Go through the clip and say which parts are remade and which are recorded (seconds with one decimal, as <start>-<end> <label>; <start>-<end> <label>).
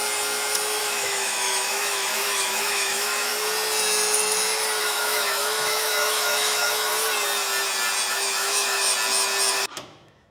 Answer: 0.0-0.8 recorded; 0.8-3.3 remade; 3.3-4.8 recorded; 4.8-6.9 remade; 6.9-8.1 recorded; 8.1-8.9 remade; 8.9-9.5 recorded; 9.5-10.3 remade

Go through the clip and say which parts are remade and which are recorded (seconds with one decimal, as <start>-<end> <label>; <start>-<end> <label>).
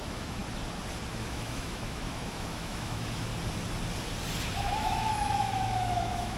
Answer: 0.0-0.4 remade; 0.4-1.1 recorded; 1.1-3.3 remade; 3.3-4.6 recorded; 4.6-6.4 remade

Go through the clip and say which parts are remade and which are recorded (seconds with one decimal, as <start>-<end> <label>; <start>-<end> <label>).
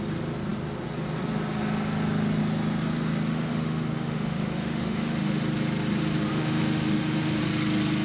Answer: 0.0-3.3 recorded; 3.3-5.4 remade; 5.4-6.3 recorded; 6.3-7.4 remade; 7.4-8.0 recorded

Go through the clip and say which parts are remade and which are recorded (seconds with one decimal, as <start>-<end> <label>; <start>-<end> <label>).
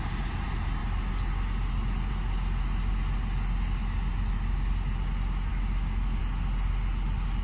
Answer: 0.0-5.5 recorded; 5.5-6.2 remade; 6.2-7.4 recorded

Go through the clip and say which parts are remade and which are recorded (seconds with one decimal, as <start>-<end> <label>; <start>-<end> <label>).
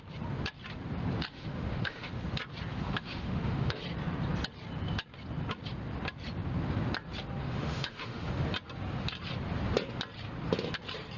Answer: 0.0-1.3 recorded; 1.3-2.1 remade; 2.1-2.7 recorded; 2.7-3.8 remade; 3.8-7.4 recorded; 7.4-8.3 remade; 8.3-11.2 recorded